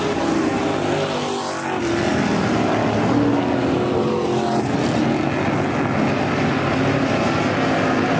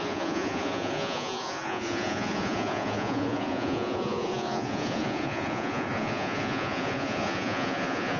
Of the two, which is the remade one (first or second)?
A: second